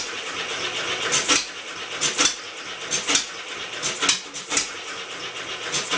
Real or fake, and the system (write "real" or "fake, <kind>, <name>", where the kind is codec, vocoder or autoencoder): real